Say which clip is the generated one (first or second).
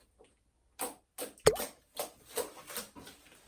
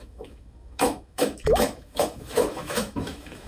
second